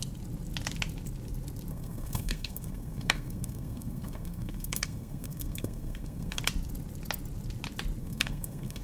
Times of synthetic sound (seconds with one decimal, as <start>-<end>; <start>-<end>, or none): 1.7-6.4; 8.0-8.8